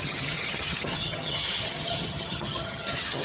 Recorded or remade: remade